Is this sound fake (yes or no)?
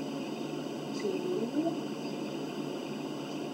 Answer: no